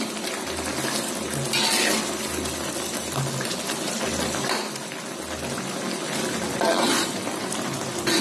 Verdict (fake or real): real